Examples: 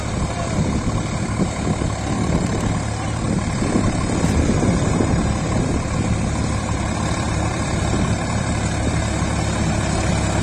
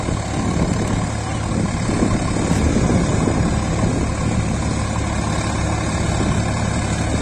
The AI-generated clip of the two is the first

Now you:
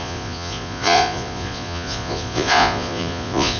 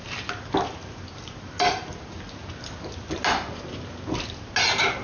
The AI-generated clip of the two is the first